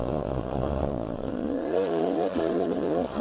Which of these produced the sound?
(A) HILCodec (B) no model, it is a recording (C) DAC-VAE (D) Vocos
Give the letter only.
D